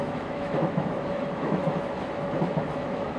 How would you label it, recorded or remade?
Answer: remade